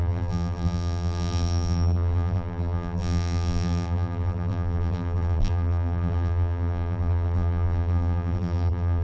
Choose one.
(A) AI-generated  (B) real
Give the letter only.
A